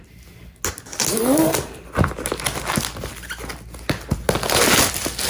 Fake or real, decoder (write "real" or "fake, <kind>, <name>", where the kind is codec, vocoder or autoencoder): real